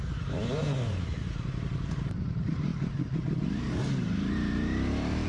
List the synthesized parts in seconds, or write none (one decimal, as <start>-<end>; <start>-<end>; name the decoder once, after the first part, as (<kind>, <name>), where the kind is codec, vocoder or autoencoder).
0.0-2.7 (vocoder, BigVGAN v2); 3.6-5.3